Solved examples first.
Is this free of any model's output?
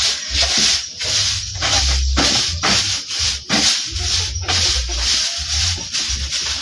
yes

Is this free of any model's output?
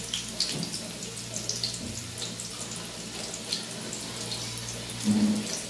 yes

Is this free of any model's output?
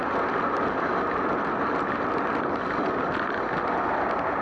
yes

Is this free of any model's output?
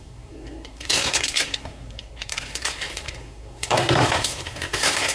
no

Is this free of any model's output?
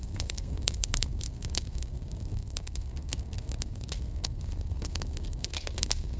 no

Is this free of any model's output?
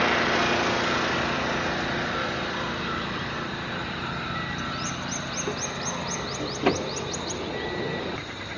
yes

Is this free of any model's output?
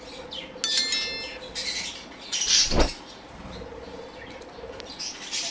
yes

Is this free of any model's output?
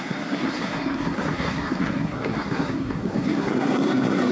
no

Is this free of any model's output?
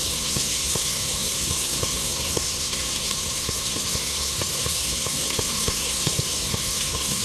no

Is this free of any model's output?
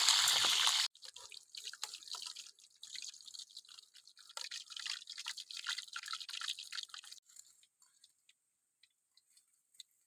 yes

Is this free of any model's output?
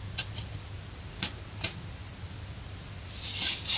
yes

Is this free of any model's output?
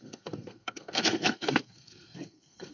no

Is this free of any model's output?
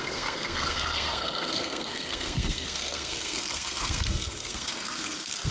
no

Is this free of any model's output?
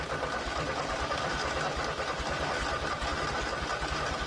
yes